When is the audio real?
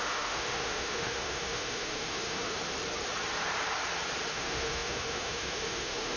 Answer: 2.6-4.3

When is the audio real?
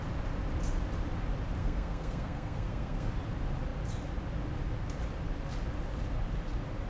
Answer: 0.0-1.6; 3.1-6.9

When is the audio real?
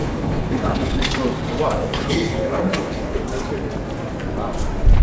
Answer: 1.0-1.9; 3.2-5.0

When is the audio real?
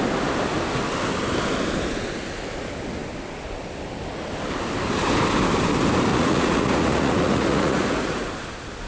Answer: 0.0-6.1; 8.3-8.9